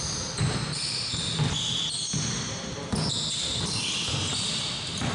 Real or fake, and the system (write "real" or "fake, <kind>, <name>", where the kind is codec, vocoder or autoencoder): real